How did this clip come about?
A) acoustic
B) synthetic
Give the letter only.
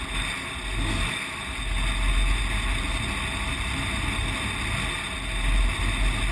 A